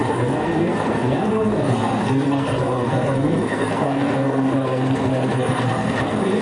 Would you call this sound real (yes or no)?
no